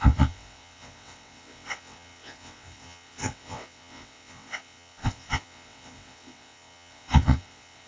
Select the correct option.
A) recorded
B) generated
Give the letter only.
B